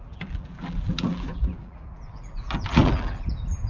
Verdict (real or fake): fake